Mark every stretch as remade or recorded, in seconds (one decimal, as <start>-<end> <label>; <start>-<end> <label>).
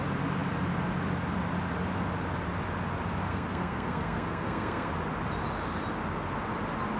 0.0-3.3 recorded; 3.3-4.9 remade; 4.9-7.0 recorded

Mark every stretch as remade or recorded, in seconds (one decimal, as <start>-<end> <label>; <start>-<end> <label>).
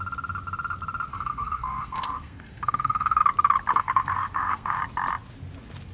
0.0-1.1 recorded; 1.1-3.2 remade; 3.2-3.7 recorded; 3.7-4.8 remade; 4.8-5.9 recorded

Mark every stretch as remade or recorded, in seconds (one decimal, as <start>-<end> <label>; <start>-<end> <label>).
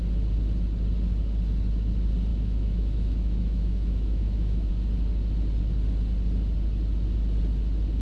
0.0-2.3 recorded; 2.3-4.7 remade; 4.7-8.0 recorded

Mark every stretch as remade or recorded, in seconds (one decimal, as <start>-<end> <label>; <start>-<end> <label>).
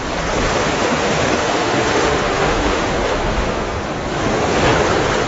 0.0-0.6 recorded; 0.6-3.8 remade; 3.8-5.3 recorded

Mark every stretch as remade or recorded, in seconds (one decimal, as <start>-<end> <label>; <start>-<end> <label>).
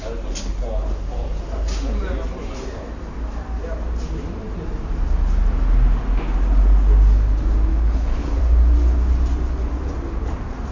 0.0-7.7 recorded; 7.7-8.4 remade; 8.4-10.7 recorded